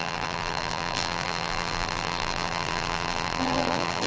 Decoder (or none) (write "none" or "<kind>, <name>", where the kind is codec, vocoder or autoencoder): vocoder, BigVGAN v2